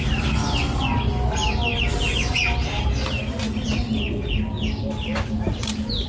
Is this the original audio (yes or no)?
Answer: yes